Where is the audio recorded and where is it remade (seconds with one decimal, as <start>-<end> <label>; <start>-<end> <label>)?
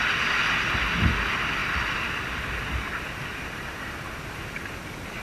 0.0-5.2 recorded